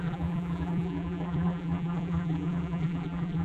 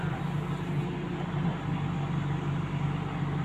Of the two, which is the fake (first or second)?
first